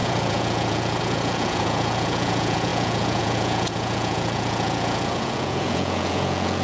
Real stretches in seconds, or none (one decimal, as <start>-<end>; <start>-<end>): none